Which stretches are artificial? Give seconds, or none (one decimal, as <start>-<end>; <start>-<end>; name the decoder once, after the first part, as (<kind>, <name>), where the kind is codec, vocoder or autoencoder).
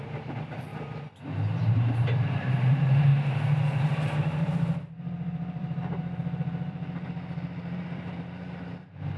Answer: 0.0-0.7 (vocoder, BigVGAN v2); 1.7-3.1; 3.8-9.2